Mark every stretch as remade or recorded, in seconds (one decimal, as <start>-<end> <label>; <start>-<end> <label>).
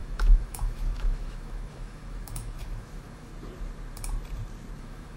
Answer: 0.0-3.3 remade; 3.3-4.8 recorded; 4.8-5.2 remade